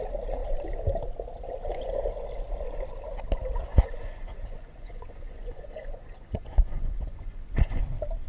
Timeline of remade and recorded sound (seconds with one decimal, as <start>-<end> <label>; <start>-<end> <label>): 0.0-3.7 recorded; 3.7-7.8 remade; 7.8-8.3 recorded